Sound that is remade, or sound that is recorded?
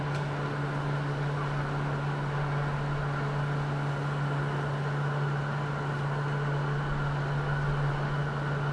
recorded